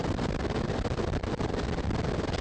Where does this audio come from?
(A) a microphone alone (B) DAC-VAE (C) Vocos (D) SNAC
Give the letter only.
A